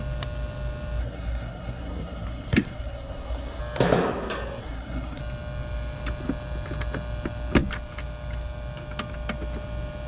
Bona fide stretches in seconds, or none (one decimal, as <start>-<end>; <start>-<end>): 0.0-1.0; 3.6-4.6; 5.2-10.1